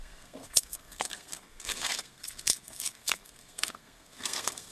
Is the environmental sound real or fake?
fake